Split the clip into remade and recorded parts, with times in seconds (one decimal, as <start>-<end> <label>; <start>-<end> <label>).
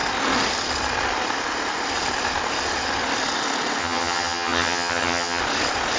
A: 0.0-3.8 recorded; 3.8-5.4 remade; 5.4-6.0 recorded